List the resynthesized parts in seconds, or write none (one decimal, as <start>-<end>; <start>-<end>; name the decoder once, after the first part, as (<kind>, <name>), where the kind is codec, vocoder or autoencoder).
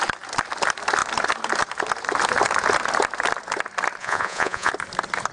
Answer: 4.0-4.7 (vocoder, Vocos)